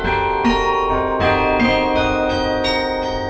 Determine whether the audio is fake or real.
real